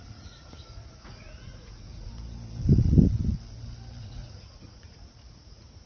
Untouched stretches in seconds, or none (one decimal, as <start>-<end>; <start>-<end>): 2.1-4.0